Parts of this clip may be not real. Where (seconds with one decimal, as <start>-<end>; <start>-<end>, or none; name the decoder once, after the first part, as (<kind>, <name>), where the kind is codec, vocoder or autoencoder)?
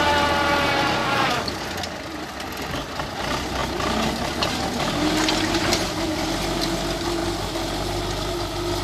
1.0-1.5 (codec, DAC)